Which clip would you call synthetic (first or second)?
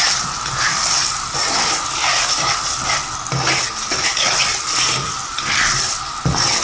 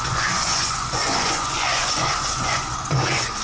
second